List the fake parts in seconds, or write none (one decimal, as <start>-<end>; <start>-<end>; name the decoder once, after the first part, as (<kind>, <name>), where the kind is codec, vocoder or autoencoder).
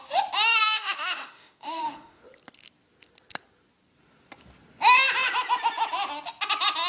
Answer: 0.6-2.2 (autoencoder, DAC-VAE)